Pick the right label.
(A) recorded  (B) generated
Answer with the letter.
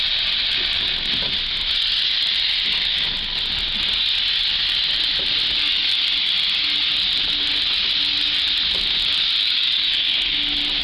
A